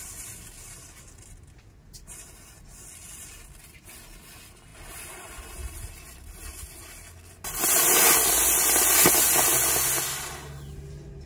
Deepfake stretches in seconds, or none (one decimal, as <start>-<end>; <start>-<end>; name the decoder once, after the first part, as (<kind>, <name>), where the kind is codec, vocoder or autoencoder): none